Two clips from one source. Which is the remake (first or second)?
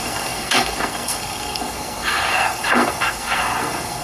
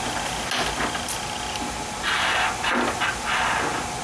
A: first